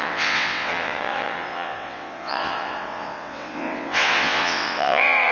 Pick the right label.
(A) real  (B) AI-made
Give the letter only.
B